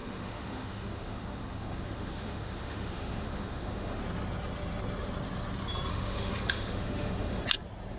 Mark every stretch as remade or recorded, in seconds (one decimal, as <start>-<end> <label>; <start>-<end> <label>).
0.0-4.0 remade; 4.0-5.9 recorded; 5.9-7.4 remade; 7.4-8.0 recorded